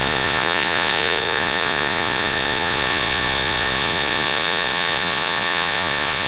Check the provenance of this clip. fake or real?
fake